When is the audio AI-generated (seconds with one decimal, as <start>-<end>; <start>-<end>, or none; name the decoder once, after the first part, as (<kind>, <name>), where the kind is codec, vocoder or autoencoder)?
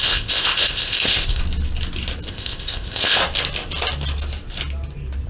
0.0-1.4 (codec, ZipCodec); 2.3-3.2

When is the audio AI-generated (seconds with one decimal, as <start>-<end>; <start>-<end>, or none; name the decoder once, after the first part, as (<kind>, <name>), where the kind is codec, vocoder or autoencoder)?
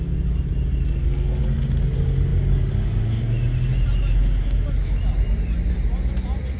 none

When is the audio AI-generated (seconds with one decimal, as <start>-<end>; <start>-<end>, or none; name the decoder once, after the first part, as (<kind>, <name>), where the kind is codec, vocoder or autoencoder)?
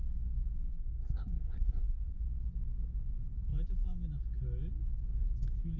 0.7-2.2 (codec, SNAC)